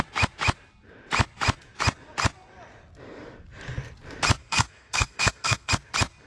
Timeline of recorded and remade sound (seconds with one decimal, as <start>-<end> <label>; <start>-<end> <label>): 0.0-4.4 recorded; 4.4-5.7 remade; 5.7-6.3 recorded